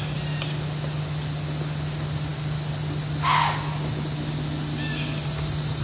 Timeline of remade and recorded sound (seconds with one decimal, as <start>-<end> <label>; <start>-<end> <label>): 0.0-5.8 recorded